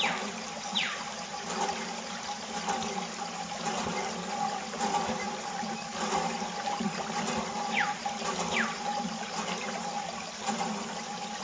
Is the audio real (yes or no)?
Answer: yes